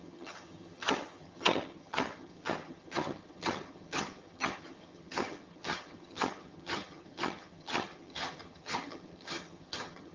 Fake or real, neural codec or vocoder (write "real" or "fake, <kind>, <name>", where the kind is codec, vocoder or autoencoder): fake, vocoder, HiFi-GAN